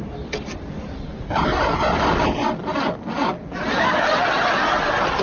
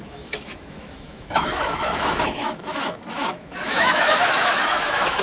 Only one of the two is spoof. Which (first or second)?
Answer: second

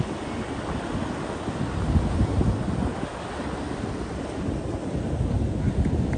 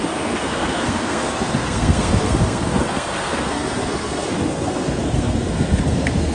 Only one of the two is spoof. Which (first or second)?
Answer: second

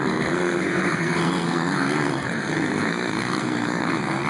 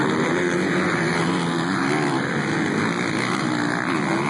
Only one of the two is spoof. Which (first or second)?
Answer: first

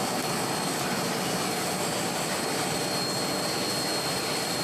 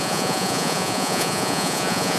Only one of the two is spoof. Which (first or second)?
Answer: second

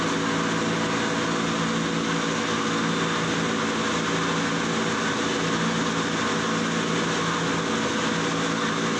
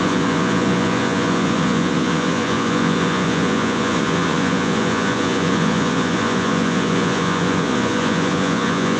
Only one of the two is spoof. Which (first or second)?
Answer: second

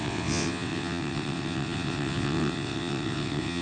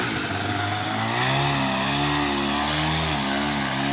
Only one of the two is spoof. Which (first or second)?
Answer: first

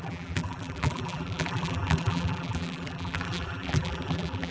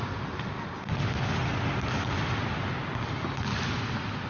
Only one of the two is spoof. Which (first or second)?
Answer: first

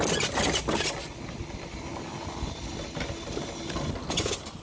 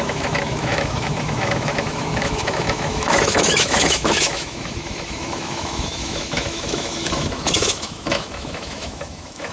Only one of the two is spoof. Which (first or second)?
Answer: second